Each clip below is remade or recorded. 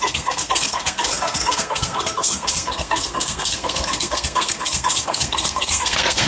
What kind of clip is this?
remade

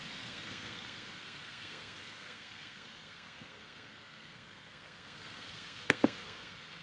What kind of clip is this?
remade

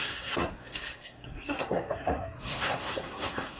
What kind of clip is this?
remade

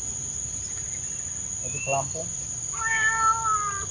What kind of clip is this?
recorded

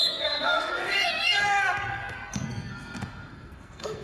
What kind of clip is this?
remade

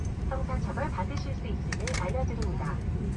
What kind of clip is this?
recorded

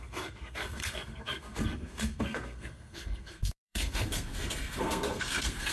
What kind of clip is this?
remade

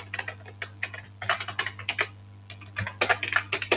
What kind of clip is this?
recorded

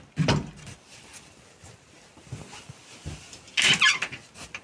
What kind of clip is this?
recorded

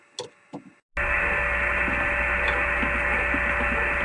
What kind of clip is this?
recorded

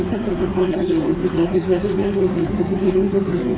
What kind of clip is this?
remade